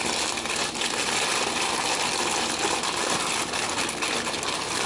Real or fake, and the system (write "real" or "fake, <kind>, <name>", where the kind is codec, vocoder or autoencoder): real